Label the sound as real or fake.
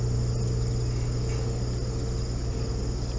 real